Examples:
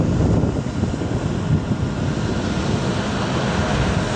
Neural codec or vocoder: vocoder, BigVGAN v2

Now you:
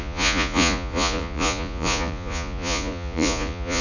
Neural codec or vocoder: vocoder, Vocos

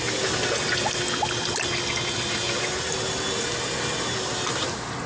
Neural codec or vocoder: none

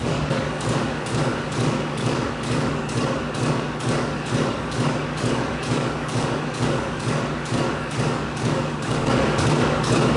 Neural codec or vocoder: codec, DAC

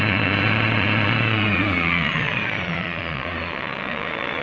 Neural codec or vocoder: vocoder, Vocos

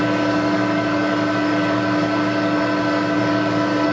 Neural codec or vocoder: codec, DAC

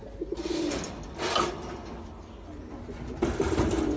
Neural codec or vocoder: none